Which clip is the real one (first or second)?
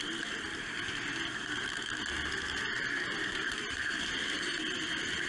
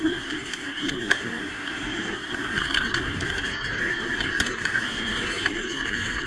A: first